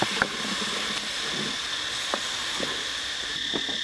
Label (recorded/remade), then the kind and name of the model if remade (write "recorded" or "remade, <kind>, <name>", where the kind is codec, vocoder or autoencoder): recorded